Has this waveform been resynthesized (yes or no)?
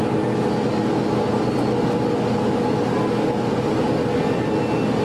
no